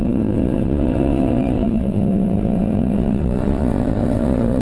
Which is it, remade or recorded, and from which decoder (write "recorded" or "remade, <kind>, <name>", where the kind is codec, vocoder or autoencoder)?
remade, vocoder, WaveNeXt